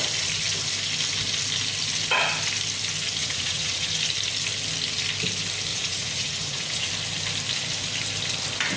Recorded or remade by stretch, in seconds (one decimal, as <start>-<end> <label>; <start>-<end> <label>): 0.0-3.2 recorded; 3.2-3.9 remade; 3.9-5.7 recorded; 5.7-6.9 remade; 6.9-8.8 recorded